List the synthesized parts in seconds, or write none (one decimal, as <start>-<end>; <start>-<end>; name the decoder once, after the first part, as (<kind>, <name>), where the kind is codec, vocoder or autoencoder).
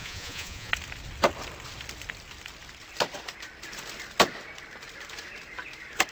0.0-0.7 (vocoder, Vocos)